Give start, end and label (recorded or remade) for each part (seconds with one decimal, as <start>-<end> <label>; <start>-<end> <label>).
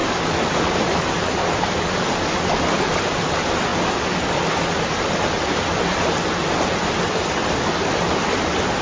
0.0-8.8 recorded